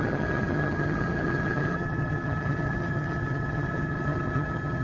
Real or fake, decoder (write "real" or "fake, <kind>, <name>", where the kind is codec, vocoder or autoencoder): fake, vocoder, HiFi-GAN